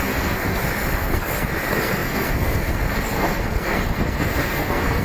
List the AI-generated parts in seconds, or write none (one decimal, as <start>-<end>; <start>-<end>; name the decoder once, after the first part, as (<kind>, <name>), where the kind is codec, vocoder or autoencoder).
0.0-5.0 (codec, SNAC)